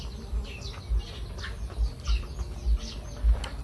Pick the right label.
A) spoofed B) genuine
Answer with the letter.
B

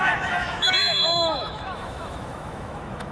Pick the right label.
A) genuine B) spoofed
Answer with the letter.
B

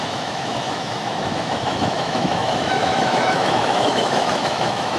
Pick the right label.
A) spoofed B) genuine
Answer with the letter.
A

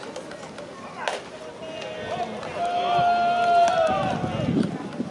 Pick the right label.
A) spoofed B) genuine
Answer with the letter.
B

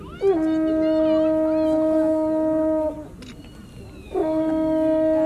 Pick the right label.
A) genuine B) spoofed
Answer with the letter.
A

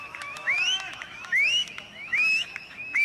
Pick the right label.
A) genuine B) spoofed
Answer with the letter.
B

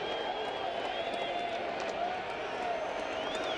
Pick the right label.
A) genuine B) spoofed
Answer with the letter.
A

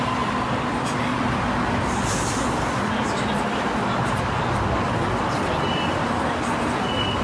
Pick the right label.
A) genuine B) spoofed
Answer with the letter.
A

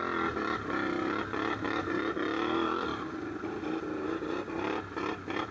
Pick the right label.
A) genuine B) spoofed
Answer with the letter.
A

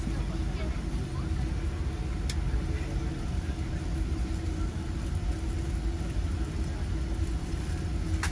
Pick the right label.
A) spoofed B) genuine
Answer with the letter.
B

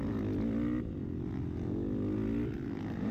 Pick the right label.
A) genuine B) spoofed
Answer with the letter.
A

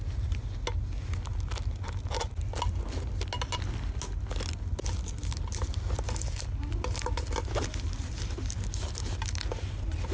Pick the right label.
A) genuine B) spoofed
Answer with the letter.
A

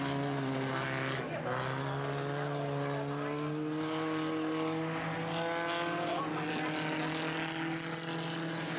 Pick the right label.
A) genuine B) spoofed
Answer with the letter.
A